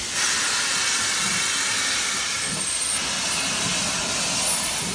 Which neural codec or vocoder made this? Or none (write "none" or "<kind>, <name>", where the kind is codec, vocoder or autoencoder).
none